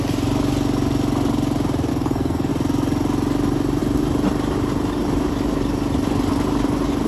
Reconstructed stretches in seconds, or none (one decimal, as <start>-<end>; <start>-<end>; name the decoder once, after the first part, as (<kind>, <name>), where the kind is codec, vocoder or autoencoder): 1.9-2.5 (codec, SNAC)

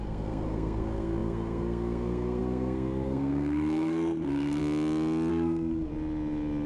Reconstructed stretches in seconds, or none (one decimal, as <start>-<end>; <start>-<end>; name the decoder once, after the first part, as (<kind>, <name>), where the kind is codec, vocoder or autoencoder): 0.0-4.6 (codec, SNAC); 5.3-5.9

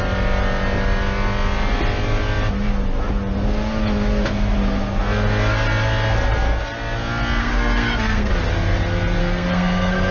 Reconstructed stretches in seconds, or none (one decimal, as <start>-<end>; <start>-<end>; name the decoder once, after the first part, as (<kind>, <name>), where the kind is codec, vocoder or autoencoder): 7.4-8.3 (codec, SNAC); 9.2-10.1

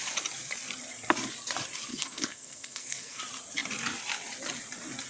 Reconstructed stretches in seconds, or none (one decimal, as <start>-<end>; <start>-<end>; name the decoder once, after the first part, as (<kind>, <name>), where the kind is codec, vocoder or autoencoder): 1.9-3.2 (codec, SNAC)